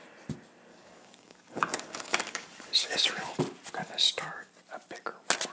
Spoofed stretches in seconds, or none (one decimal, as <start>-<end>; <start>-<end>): 0.7-3.4; 3.8-4.5